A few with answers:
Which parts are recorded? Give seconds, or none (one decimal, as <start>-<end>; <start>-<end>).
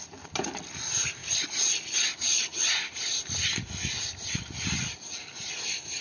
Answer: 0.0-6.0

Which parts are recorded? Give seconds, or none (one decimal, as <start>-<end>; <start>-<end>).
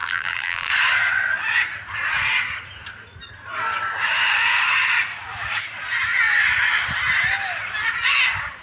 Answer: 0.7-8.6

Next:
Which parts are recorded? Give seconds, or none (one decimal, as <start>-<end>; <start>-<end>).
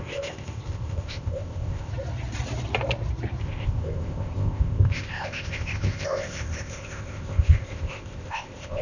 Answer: 1.9-3.4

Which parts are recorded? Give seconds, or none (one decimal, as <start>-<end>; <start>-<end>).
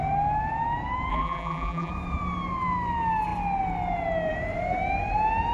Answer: 0.0-1.1; 1.9-5.5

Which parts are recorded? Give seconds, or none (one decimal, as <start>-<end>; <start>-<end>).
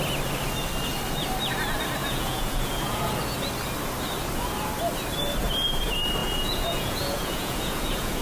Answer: 0.0-2.0; 3.1-6.2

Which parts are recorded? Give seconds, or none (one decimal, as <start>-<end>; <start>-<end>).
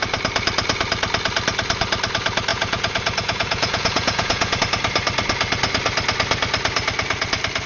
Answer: 0.0-2.5; 4.6-7.7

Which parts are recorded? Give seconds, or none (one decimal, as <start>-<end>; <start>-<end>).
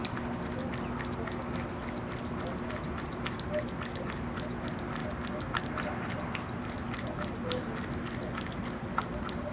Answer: 0.0-9.5